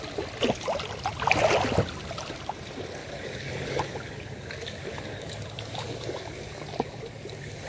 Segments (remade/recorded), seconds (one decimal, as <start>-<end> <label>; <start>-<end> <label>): 0.0-3.0 recorded; 3.0-7.7 remade